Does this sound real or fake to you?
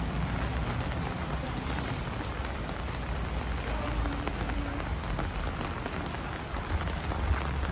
real